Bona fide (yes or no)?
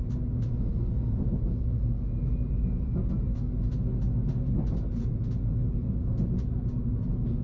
yes